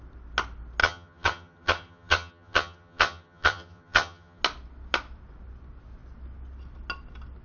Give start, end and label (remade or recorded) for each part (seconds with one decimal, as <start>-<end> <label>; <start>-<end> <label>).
0.0-0.8 recorded; 0.8-4.4 remade; 4.4-7.4 recorded